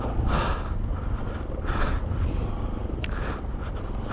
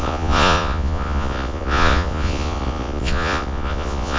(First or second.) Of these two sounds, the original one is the first